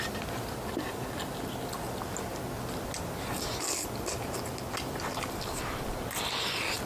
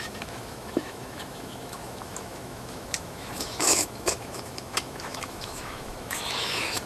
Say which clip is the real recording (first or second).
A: first